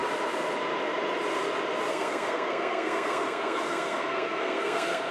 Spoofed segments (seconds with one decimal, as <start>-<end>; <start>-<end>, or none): 1.9-5.1